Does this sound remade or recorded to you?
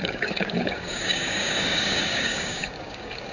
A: remade